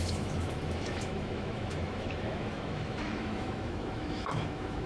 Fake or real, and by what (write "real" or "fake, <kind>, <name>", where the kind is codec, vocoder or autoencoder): fake, autoencoder, DAC-VAE